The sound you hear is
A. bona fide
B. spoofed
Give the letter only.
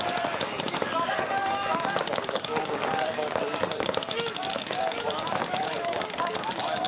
B